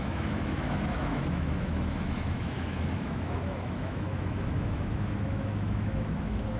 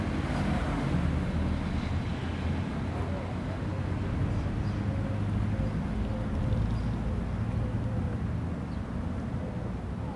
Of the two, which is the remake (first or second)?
first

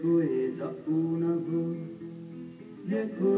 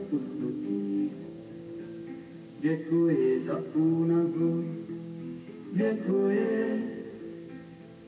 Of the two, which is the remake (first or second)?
second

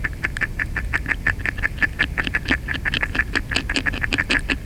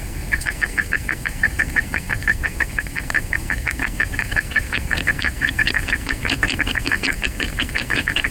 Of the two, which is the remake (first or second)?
second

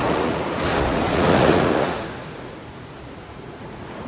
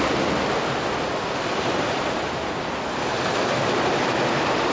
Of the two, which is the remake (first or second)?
first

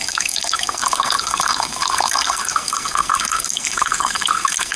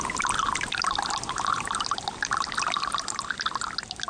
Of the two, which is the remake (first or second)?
first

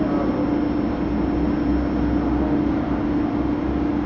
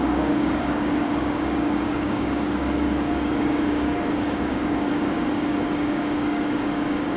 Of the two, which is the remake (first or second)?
second